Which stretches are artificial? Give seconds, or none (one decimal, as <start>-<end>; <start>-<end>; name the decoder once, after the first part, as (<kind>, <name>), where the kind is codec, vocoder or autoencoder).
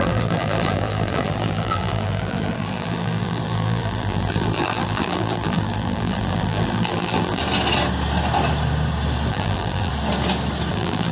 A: 0.0-7.4 (vocoder, BigVGAN v2); 9.3-9.9; 10.7-11.1